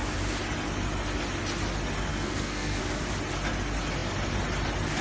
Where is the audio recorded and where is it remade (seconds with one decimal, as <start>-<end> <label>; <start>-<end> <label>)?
0.0-2.1 recorded; 2.1-2.8 remade; 2.8-5.0 recorded